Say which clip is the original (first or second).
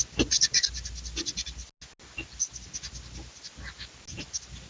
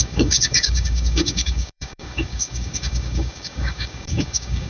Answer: first